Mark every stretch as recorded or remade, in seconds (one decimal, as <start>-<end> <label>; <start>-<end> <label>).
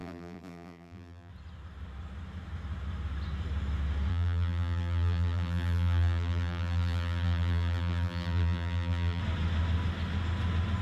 0.0-1.3 remade; 1.3-4.1 recorded; 4.1-9.2 remade; 9.2-10.8 recorded